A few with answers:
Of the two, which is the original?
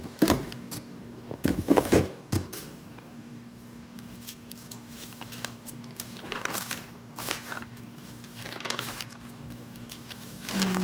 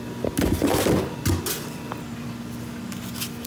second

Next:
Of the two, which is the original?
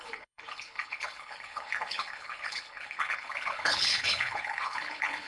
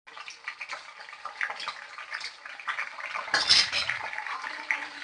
second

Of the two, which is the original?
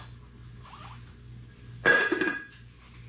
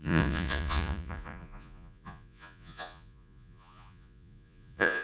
first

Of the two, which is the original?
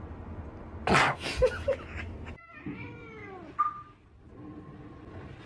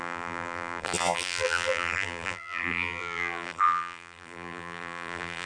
first